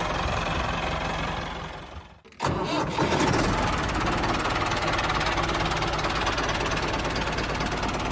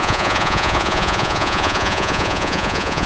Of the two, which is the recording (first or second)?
first